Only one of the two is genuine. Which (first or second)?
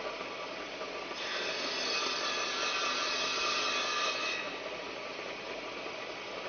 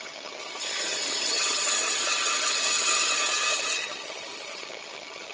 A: first